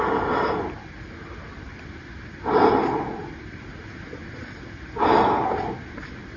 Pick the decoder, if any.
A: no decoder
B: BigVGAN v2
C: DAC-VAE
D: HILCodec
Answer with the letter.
A